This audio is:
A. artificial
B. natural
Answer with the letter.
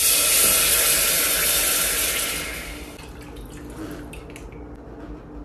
B